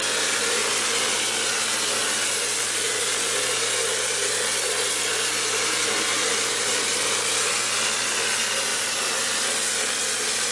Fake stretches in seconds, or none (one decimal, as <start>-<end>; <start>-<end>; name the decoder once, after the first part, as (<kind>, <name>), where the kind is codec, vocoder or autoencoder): 8.7-9.5 (vocoder, BigVGAN v2)